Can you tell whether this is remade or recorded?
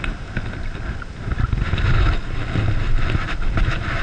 recorded